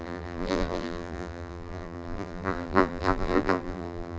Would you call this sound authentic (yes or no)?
no